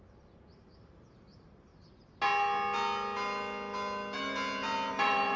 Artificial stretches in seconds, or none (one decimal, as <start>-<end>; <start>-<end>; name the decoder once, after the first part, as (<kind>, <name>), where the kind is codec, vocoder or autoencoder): 0.0-1.7 (vocoder, BigVGAN v2); 4.9-5.4